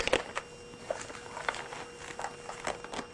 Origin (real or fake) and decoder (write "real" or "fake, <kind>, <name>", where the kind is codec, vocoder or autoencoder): real